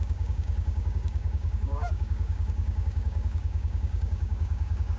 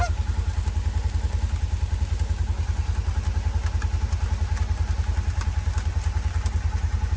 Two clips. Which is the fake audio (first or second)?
first